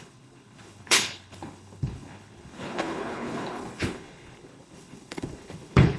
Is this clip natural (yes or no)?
no